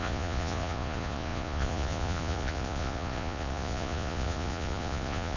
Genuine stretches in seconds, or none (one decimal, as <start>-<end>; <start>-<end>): none